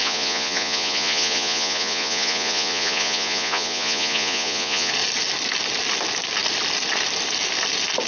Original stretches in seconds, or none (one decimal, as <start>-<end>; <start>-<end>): 4.9-8.1